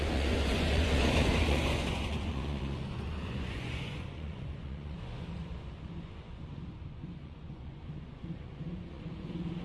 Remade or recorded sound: remade